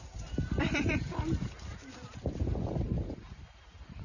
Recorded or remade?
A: remade